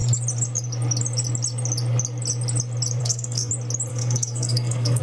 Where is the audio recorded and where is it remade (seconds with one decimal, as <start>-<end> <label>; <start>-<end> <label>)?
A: 0.0-3.0 recorded; 3.0-3.5 remade; 3.5-3.9 recorded; 3.9-5.0 remade

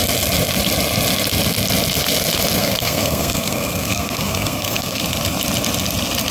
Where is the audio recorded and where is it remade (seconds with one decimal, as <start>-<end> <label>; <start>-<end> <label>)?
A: 0.0-2.6 recorded; 2.6-5.0 remade; 5.0-6.3 recorded

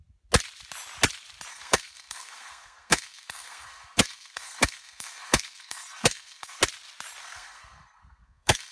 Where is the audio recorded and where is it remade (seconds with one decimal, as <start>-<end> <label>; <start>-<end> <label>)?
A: 0.0-1.5 recorded; 1.5-6.6 remade; 6.6-7.2 recorded; 7.2-8.7 remade

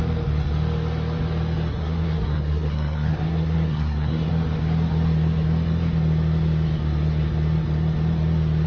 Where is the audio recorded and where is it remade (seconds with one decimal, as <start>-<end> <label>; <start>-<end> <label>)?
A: 0.0-1.7 recorded; 1.7-4.3 remade; 4.3-8.7 recorded